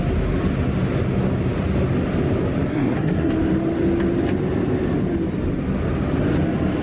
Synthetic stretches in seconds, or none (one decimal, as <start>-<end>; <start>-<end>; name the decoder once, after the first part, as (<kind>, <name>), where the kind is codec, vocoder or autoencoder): 2.7-3.3 (codec, SNAC)